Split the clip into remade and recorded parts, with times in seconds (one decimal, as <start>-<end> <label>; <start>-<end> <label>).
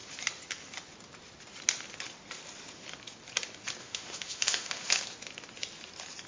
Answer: 0.0-3.8 recorded; 3.8-5.0 remade; 5.0-6.3 recorded